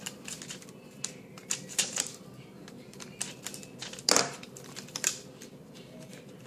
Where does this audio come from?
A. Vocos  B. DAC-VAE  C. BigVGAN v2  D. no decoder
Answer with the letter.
C